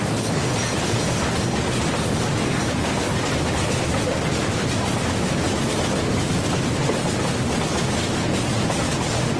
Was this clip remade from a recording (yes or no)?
no